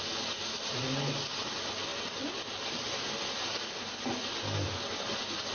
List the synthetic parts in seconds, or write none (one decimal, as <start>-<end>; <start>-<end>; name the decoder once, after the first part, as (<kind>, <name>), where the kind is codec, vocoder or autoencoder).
none